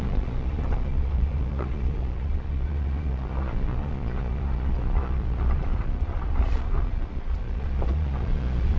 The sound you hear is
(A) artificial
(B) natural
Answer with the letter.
A